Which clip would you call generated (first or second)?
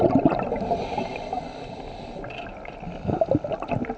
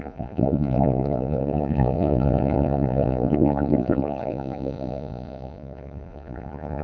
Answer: second